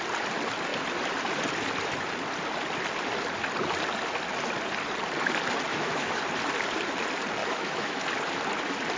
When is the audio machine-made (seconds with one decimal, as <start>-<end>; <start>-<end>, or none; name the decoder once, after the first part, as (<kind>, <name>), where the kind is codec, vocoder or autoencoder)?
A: 5.7-6.2 (autoencoder, DAC-VAE); 7.4-8.0